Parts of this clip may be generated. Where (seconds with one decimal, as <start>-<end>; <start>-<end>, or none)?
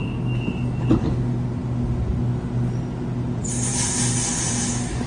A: none